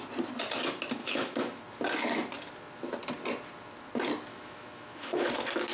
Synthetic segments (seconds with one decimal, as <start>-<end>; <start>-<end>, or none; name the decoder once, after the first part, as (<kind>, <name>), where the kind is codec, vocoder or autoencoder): 1.0-1.6 (autoencoder, DAC-VAE); 4.3-5.3